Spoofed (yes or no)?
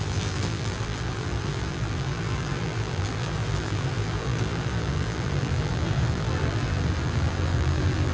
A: yes